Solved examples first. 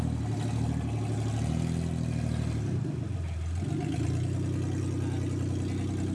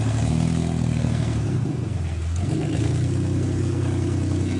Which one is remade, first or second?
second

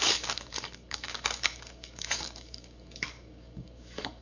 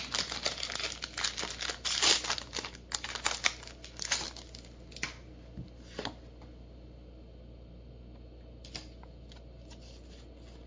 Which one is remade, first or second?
first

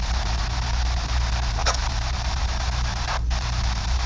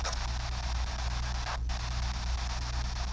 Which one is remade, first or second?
first